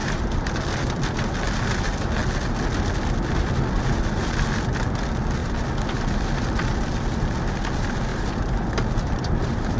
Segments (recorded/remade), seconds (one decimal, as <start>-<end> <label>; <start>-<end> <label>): 0.0-0.5 remade; 0.5-8.1 recorded; 8.1-9.8 remade